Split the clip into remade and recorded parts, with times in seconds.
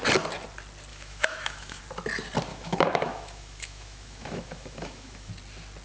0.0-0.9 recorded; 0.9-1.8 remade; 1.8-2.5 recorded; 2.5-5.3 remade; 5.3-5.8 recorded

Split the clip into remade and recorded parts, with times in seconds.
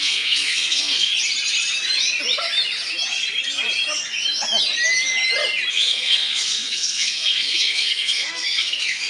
0.0-1.1 remade; 1.1-5.7 recorded; 5.7-9.1 remade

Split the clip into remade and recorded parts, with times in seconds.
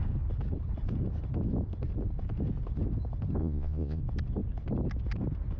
0.0-3.4 recorded; 3.4-4.0 remade; 4.0-5.6 recorded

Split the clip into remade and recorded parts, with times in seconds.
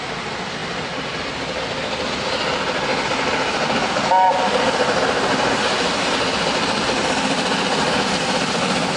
0.0-9.0 recorded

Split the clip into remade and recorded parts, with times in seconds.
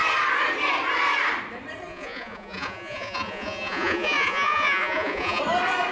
0.0-1.9 recorded; 1.9-5.4 remade; 5.4-5.9 recorded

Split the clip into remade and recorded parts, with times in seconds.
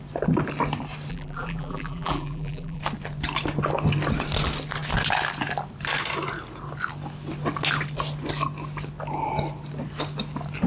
0.0-1.1 recorded; 1.1-2.8 remade; 2.8-10.7 recorded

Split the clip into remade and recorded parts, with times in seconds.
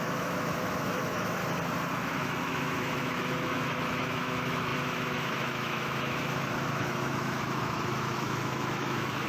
0.0-1.4 remade; 1.4-1.9 recorded; 1.9-9.3 remade